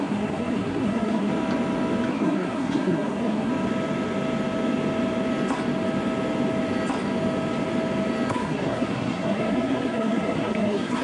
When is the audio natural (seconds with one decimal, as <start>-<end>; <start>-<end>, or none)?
1.3-2.1; 3.5-8.3